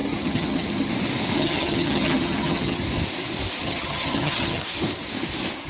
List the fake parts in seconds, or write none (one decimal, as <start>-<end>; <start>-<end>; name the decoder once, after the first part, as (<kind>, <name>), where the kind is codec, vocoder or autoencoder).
0.0-0.9 (vocoder, HiFi-GAN); 1.4-2.8; 3.6-4.6